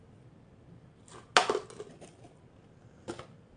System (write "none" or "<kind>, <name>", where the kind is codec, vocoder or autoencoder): none